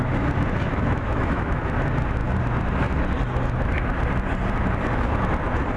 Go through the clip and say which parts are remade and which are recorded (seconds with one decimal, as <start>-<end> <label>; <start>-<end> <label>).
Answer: 0.0-0.7 recorded; 0.7-1.6 remade; 1.6-5.8 recorded